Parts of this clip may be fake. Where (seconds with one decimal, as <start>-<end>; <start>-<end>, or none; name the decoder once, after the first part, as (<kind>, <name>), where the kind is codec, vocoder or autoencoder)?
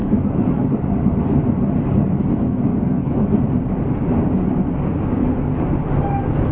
0.0-1.2 (codec, DAC); 2.7-3.3